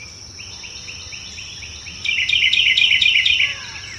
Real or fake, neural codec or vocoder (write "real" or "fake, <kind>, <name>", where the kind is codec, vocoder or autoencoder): real